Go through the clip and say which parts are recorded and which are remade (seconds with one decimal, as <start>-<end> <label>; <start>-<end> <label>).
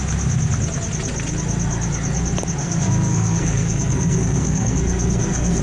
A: 0.0-2.6 recorded; 2.6-5.6 remade